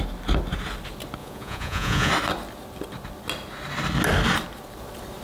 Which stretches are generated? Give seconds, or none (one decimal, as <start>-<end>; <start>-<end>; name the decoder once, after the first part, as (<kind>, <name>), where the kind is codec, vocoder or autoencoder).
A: 1.2-2.1 (vocoder, Vocos)